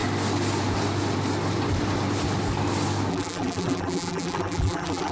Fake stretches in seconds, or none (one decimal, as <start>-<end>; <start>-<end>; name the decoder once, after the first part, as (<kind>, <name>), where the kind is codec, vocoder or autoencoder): 3.1-5.1 (vocoder, BigVGAN v2)